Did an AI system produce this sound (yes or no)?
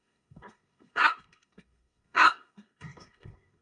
yes